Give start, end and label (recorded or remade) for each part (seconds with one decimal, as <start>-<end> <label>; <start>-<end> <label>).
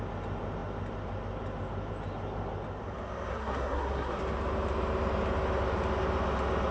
0.0-3.3 recorded; 3.3-4.2 remade; 4.2-6.7 recorded